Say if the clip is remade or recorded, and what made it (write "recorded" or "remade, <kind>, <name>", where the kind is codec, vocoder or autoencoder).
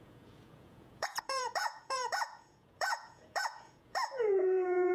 remade, vocoder, Vocos